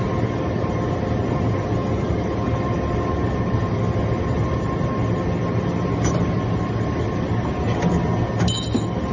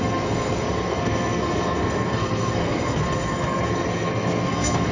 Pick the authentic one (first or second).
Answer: first